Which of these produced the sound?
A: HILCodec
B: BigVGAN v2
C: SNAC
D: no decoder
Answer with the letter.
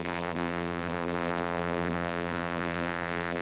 B